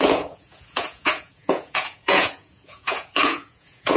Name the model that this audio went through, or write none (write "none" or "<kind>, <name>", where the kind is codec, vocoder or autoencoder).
vocoder, Vocos